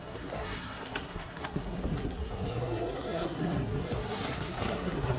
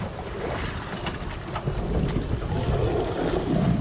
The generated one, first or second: first